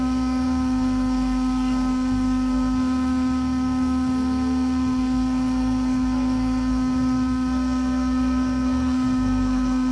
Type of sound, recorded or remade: remade